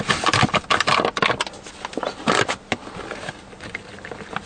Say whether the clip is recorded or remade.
recorded